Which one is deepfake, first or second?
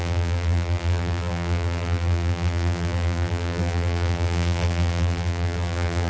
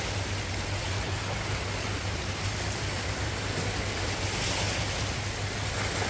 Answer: first